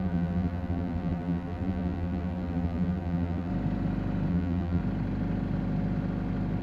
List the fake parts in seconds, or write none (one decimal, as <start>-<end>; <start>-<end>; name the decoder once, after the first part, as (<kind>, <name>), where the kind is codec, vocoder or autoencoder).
0.0-3.5 (vocoder, BigVGAN v2); 4.3-4.8